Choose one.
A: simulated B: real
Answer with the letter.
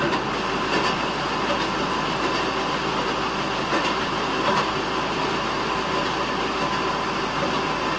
B